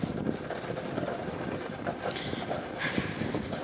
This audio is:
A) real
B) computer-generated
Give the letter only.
B